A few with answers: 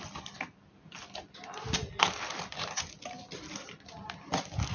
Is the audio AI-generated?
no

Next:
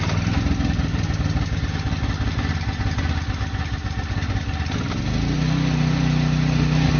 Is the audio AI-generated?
no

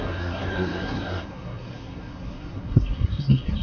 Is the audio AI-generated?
yes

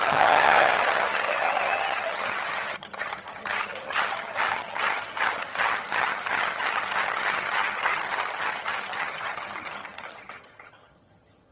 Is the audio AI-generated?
yes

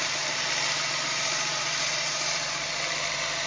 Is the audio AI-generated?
yes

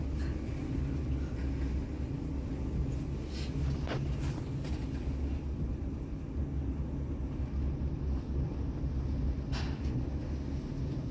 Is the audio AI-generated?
no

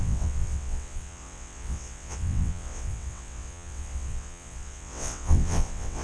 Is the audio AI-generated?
yes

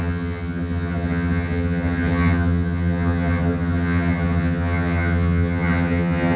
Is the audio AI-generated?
yes